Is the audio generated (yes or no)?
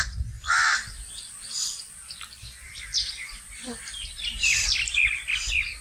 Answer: yes